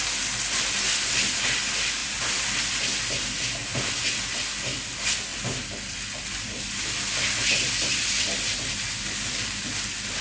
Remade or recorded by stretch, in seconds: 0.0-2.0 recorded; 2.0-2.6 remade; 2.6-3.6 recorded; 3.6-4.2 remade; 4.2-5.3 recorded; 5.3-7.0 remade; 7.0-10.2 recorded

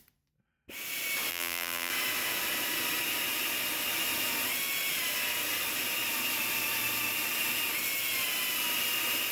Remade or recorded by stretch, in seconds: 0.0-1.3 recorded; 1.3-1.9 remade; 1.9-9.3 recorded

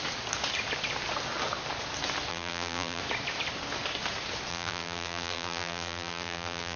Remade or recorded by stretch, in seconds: 0.0-2.3 recorded; 2.3-3.0 remade; 3.0-4.5 recorded; 4.5-6.8 remade